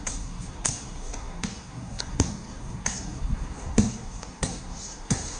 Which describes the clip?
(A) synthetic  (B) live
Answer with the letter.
A